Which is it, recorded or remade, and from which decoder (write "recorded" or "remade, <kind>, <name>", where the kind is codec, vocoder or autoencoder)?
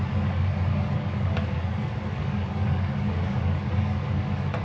remade, codec, DAC